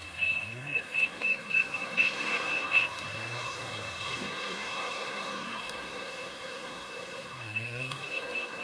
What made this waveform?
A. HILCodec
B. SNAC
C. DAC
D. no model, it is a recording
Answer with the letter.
B